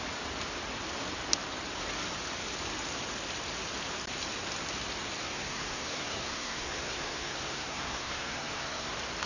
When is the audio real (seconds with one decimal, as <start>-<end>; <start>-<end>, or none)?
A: 0.0-5.2; 8.9-9.3